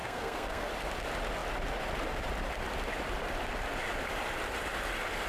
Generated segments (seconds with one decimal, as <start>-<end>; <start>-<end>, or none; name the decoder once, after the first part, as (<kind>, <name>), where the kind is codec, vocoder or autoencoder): 0.0-0.7 (codec, SNAC)